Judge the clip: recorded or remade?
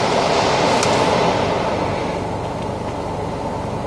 recorded